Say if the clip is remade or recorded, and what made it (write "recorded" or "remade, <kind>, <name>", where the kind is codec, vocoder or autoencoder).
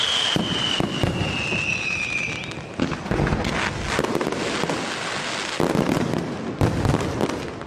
recorded